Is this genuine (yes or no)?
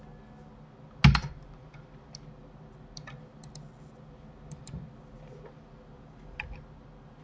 yes